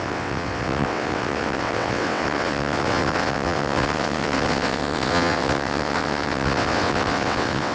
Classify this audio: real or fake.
fake